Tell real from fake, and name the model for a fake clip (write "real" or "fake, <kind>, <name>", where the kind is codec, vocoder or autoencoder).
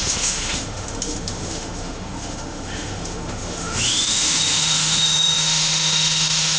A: fake, autoencoder, DAC-VAE